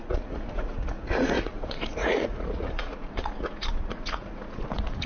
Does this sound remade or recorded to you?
remade